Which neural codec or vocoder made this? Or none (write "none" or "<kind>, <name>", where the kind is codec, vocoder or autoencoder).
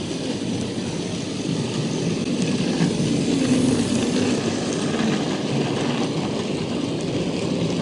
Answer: none